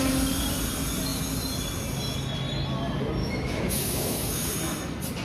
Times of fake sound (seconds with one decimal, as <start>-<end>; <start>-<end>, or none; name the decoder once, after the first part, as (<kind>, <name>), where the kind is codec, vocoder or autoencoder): 3.2-4.5 (autoencoder, DAC-VAE)